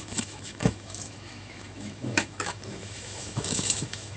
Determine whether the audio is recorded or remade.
remade